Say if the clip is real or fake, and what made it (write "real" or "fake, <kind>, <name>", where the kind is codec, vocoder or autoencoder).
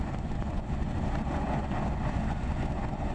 fake, vocoder, Vocos